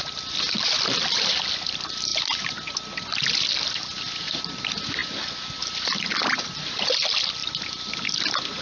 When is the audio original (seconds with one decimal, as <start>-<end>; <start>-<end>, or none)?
0.0-8.6